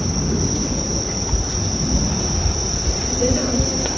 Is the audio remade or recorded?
recorded